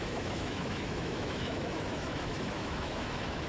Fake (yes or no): yes